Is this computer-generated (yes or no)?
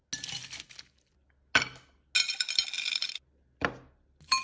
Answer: no